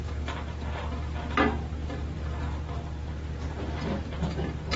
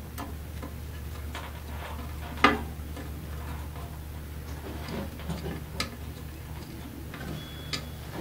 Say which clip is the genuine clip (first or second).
second